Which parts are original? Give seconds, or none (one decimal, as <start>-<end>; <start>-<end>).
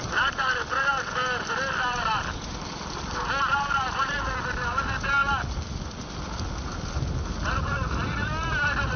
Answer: 0.0-9.0